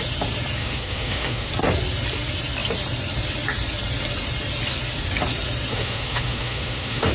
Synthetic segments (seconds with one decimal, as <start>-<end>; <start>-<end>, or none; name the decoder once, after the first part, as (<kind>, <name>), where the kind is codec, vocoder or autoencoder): 0.6-1.5 (autoencoder, DAC-VAE); 5.7-7.1